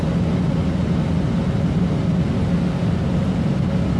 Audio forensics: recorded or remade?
recorded